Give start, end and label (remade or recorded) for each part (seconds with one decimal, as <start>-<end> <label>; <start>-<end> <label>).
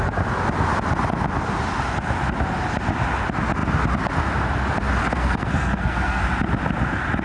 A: 0.0-5.0 recorded; 5.0-6.2 remade; 6.2-7.2 recorded